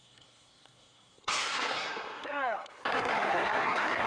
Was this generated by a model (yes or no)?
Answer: yes